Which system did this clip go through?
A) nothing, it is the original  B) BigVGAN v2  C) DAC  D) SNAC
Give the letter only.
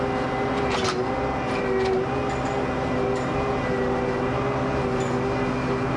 A